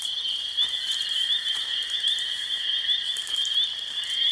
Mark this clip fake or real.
fake